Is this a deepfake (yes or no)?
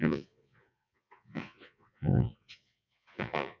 yes